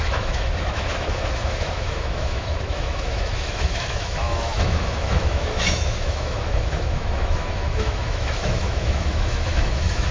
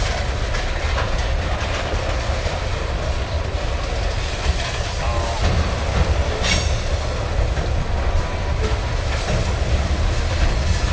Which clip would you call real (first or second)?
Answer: second